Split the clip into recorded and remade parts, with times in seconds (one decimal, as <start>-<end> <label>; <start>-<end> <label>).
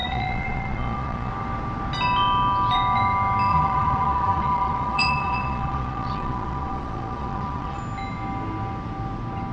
0.0-1.3 remade; 1.3-3.5 recorded; 3.5-7.8 remade; 7.8-9.5 recorded